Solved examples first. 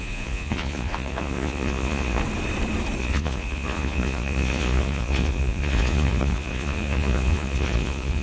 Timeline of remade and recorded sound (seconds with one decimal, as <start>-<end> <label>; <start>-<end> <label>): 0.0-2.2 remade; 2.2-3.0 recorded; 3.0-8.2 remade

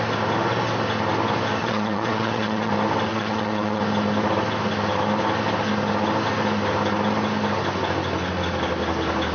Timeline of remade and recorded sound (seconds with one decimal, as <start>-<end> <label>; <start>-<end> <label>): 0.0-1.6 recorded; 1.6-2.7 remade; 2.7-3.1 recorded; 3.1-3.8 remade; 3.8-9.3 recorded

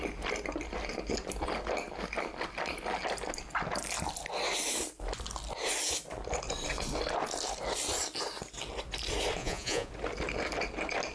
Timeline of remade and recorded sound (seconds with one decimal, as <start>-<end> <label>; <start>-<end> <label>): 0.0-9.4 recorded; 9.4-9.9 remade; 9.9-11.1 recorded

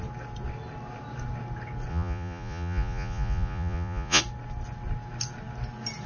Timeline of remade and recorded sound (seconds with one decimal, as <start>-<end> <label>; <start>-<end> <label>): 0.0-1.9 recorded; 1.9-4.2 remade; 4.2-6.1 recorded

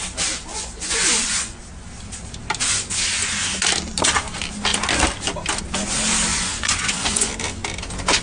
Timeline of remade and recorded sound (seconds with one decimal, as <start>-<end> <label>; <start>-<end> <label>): 0.0-0.5 recorded; 0.5-1.6 remade; 1.6-6.3 recorded; 6.3-7.3 remade; 7.3-8.2 recorded